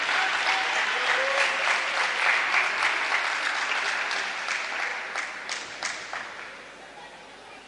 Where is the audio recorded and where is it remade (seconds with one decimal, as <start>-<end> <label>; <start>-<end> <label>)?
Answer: 0.0-7.7 recorded

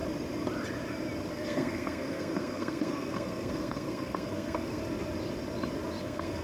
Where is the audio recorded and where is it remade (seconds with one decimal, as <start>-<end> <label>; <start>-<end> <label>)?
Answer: 0.0-1.3 recorded; 1.3-4.8 remade; 4.8-6.0 recorded; 6.0-6.4 remade